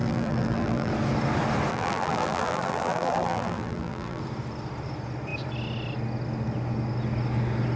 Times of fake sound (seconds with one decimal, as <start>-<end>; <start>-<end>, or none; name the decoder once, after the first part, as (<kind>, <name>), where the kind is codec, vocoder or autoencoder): 0.0-0.9 (vocoder, BigVGAN v2); 1.7-4.2